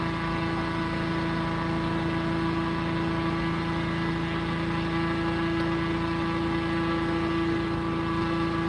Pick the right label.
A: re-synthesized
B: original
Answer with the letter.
B